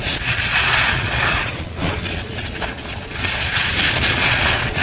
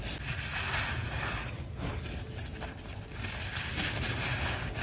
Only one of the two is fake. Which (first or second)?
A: first